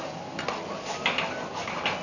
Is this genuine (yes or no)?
yes